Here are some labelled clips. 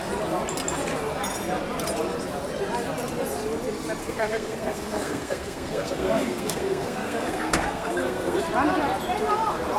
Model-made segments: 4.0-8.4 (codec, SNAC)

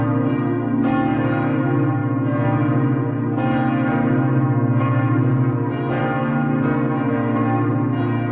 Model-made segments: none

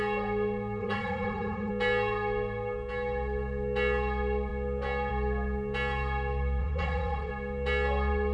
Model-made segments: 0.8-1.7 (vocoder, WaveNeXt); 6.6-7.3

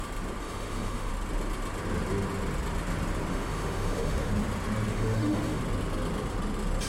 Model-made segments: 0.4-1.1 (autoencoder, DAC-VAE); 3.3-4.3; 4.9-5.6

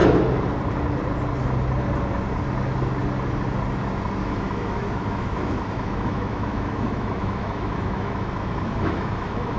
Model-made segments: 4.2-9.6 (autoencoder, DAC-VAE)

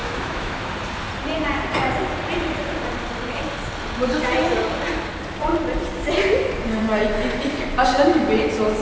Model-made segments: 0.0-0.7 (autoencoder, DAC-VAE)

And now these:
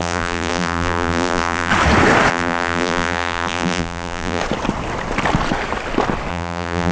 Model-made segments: 0.0-1.7 (vocoder, BigVGAN v2); 2.3-4.4; 6.3-6.9